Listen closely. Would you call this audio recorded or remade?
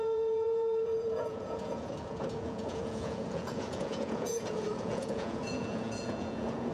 remade